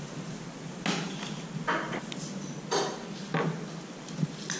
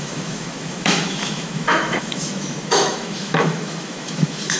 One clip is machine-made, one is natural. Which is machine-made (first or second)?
second